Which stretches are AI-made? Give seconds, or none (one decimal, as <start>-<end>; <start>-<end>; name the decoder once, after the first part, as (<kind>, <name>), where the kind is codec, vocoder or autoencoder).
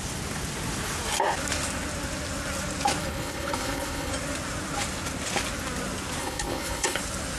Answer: 3.0-4.1 (codec, HILCodec); 6.2-7.0